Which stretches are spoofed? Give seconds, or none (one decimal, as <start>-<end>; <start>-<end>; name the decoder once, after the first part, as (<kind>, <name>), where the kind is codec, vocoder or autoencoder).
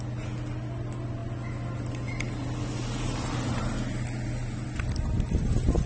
none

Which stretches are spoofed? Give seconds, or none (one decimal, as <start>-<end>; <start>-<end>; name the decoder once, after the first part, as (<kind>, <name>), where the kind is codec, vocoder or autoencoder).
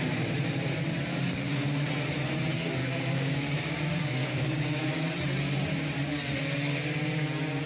2.8-4.9 (codec, DAC)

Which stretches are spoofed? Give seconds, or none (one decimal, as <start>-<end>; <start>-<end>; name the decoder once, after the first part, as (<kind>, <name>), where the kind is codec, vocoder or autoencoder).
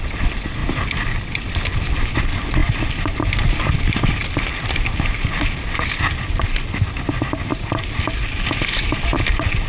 none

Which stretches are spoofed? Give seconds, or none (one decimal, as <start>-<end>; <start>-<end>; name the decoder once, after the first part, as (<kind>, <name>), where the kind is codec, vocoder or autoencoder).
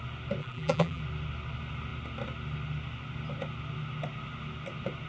0.4-1.0 (vocoder, BigVGAN v2)